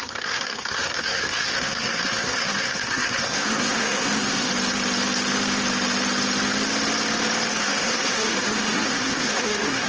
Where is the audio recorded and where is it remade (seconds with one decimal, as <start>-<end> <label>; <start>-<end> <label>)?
0.0-4.5 remade; 4.5-7.5 recorded; 7.5-9.9 remade